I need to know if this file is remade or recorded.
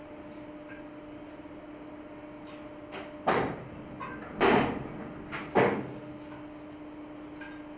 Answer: recorded